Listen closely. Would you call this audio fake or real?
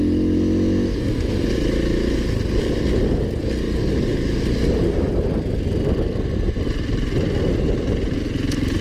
real